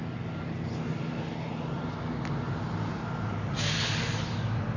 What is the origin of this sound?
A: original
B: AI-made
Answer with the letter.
A